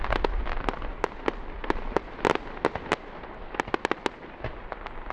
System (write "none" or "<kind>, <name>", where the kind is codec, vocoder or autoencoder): none